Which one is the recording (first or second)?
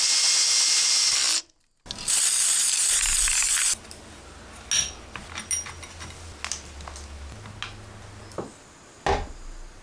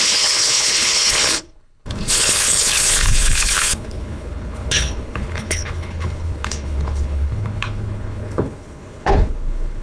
first